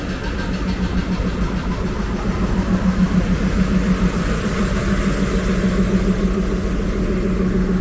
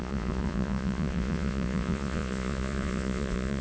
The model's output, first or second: second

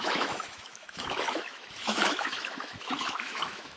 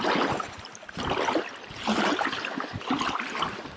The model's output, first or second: first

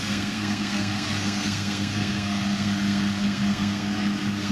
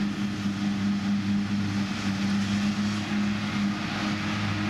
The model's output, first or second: first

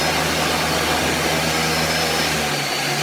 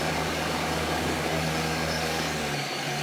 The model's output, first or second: second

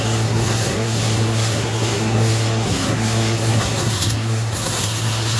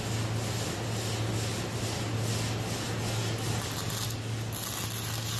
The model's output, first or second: first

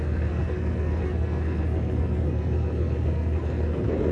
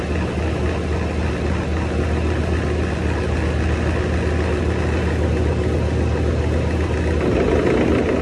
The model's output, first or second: first